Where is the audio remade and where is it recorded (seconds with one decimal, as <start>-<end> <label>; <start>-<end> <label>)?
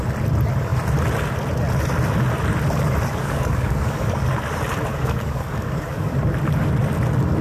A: 0.0-3.2 recorded; 3.2-4.3 remade; 4.3-4.9 recorded; 4.9-6.2 remade; 6.2-7.4 recorded